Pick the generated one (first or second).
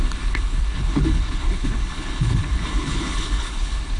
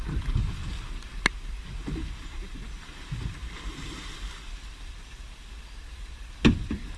first